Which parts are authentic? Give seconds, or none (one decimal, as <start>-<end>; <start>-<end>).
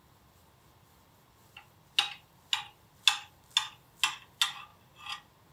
0.0-5.5